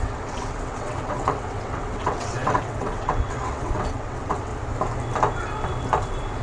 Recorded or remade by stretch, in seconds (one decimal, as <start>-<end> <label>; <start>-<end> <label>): 0.0-4.5 remade; 4.5-6.4 recorded